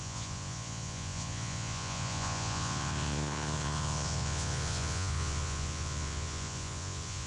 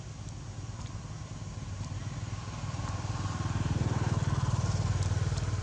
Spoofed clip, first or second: first